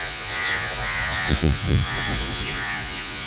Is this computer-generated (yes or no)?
yes